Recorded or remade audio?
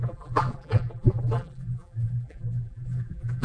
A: remade